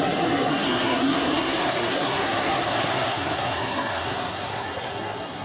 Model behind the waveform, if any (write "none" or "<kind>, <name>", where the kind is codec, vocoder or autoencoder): codec, SNAC